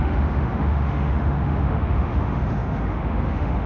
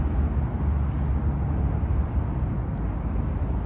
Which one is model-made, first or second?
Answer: first